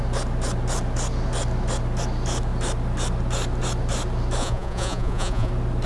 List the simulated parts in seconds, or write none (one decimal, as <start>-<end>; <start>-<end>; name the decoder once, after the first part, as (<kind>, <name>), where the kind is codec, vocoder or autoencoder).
4.4-5.5 (vocoder, Vocos)